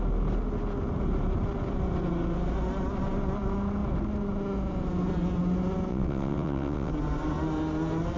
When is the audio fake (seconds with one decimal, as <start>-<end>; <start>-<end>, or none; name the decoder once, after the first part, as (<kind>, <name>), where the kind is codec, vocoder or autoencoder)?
5.9-6.9 (vocoder, WaveNeXt)